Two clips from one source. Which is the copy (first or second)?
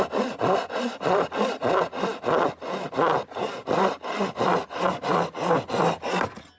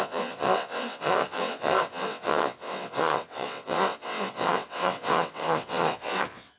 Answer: second